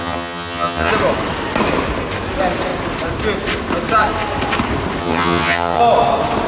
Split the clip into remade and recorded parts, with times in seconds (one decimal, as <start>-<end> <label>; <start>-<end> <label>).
0.0-0.9 remade; 0.9-5.0 recorded; 5.0-5.8 remade; 5.8-6.5 recorded